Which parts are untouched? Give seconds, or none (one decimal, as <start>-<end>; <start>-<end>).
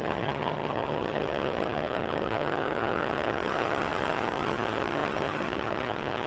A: none